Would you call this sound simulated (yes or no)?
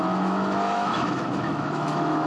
yes